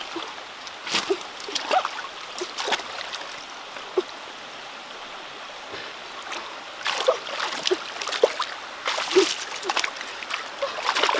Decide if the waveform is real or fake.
real